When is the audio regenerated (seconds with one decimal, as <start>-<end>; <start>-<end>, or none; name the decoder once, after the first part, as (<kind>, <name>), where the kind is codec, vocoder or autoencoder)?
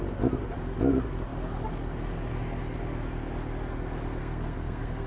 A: 4.2-5.1 (codec, SNAC)